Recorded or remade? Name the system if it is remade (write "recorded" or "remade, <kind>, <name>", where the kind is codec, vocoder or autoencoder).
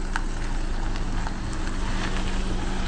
recorded